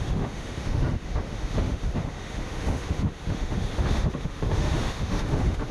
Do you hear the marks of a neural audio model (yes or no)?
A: yes